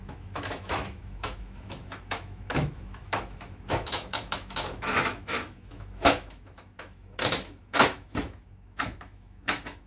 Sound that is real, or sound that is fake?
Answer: fake